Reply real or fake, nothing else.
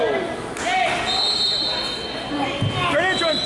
real